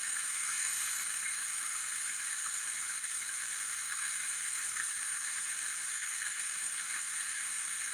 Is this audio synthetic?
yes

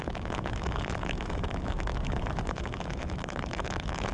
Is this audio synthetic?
yes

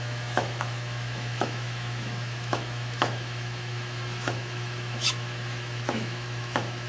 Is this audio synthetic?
yes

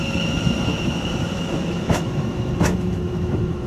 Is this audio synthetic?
yes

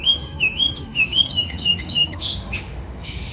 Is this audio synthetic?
yes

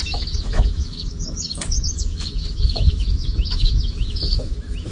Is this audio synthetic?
yes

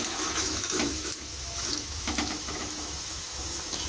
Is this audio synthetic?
yes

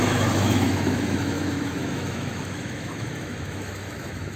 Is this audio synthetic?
yes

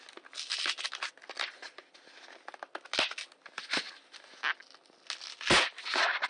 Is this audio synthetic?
no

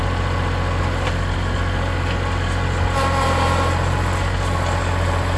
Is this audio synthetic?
no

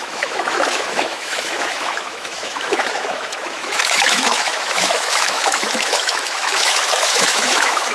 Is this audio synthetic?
yes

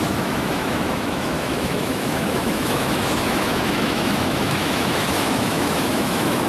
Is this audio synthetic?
yes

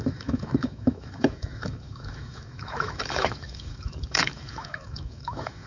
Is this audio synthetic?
yes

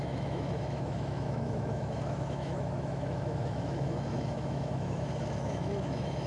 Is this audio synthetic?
yes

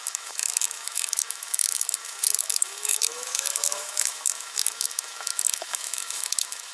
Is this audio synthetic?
yes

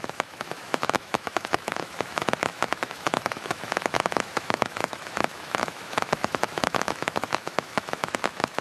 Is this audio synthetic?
yes